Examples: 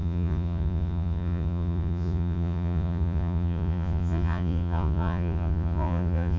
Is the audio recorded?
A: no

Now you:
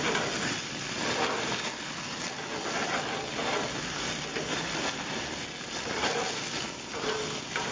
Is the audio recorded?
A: yes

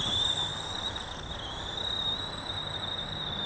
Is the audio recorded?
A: yes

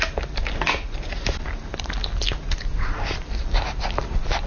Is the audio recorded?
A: yes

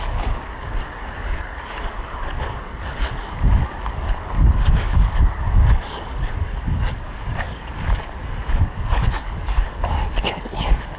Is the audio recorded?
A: no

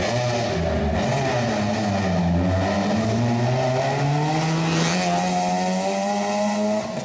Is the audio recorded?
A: yes